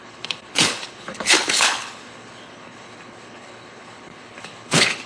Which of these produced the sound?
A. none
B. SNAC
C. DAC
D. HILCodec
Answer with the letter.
D